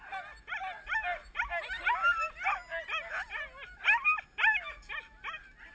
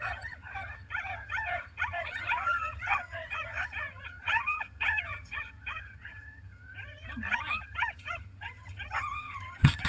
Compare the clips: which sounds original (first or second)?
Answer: first